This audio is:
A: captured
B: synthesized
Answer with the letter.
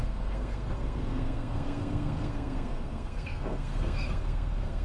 B